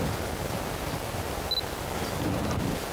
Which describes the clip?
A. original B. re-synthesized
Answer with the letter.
A